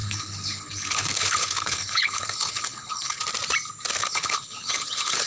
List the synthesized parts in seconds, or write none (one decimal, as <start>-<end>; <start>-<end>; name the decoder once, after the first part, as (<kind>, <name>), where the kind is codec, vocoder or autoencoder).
0.0-3.2 (codec, HILCodec); 4.0-5.3